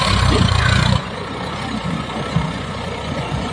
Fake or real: fake